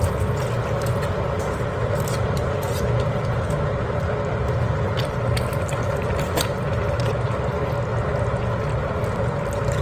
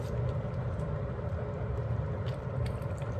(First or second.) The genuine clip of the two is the first